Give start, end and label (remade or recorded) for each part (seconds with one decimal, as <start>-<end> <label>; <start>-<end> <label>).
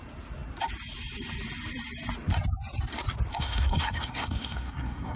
0.0-3.3 recorded; 3.3-5.2 remade